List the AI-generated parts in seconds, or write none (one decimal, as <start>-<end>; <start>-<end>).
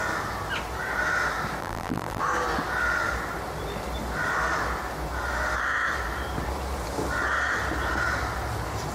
1.6-2.2